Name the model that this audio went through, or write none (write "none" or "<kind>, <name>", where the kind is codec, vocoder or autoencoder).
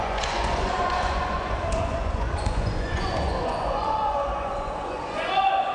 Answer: vocoder, Vocos